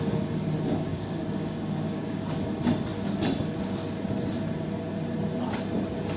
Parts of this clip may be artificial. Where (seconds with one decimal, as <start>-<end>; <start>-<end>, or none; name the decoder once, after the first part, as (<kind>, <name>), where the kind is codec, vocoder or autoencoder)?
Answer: 0.9-2.2 (codec, DAC)